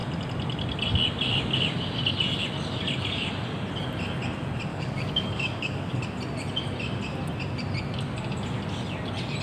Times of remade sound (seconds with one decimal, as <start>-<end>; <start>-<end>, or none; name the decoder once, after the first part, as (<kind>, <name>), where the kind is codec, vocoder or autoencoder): 4.7-6.0 (codec, DAC)